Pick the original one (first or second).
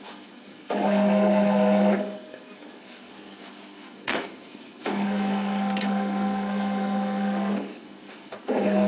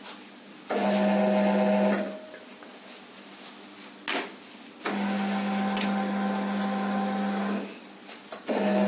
second